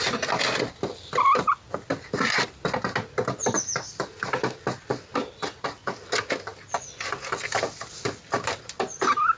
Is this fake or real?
real